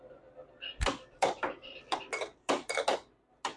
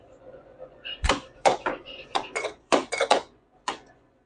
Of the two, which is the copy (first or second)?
second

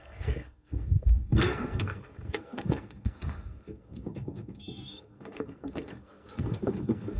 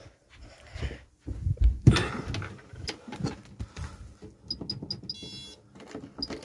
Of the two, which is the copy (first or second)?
first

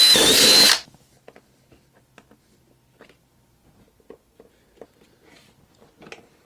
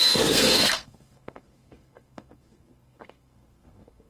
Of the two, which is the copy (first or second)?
second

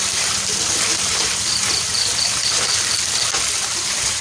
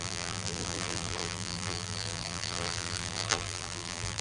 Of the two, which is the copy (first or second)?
second